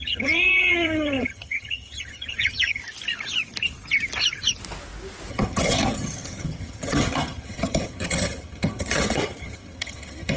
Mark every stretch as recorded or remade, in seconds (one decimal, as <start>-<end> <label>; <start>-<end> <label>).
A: 0.0-2.8 remade; 2.8-5.3 recorded; 5.3-10.4 remade